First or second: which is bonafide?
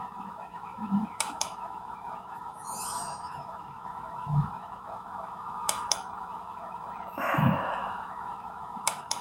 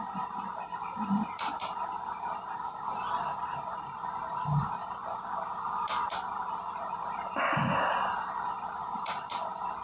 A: second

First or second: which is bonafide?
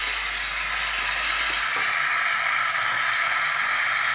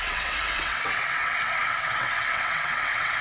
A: first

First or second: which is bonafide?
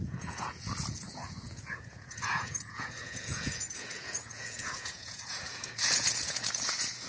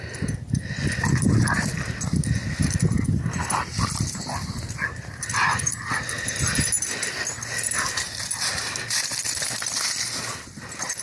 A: second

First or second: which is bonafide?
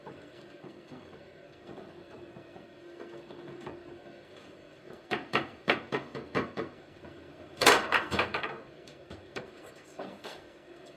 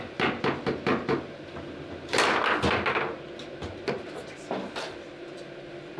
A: second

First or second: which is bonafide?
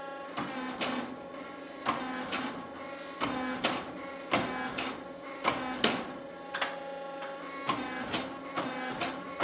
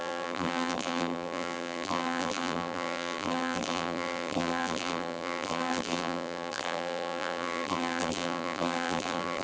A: first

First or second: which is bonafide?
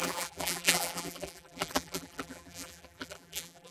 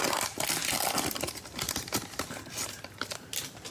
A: second